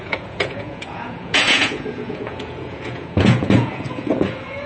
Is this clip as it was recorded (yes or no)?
no